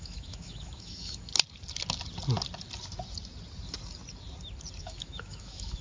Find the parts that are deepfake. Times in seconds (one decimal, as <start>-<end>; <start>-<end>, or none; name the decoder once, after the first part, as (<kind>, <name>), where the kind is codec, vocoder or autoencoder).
0.0-1.3 (autoencoder, DAC-VAE); 4.8-5.8